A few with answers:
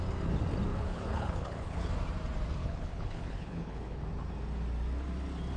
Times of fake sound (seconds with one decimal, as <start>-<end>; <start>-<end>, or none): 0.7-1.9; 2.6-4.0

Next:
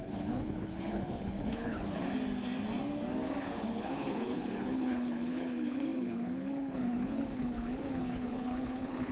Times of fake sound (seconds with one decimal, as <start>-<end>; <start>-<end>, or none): 0.0-2.0; 3.4-9.1

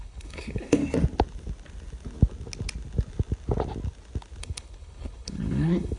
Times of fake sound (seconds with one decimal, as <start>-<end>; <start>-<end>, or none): 0.0-0.8; 4.4-6.0

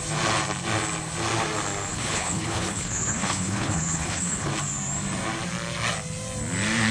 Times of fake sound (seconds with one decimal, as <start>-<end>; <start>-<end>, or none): 1.9-4.5

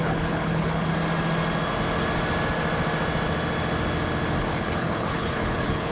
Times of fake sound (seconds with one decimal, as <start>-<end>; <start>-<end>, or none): 0.0-0.9; 4.4-5.9

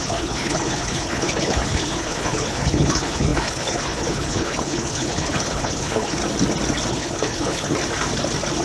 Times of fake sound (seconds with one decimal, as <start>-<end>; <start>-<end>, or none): 0.0-6.2; 6.9-7.8